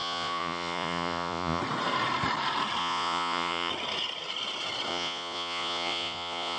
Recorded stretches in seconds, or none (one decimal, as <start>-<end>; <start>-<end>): 1.6-2.8; 3.7-4.9